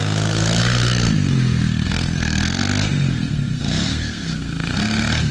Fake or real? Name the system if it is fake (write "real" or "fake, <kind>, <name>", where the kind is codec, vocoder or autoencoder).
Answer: fake, codec, SNAC